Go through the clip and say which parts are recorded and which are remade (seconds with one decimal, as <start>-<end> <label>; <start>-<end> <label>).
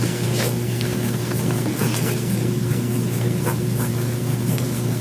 0.0-5.0 remade